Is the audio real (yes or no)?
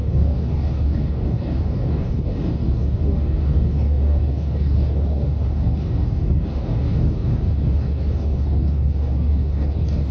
no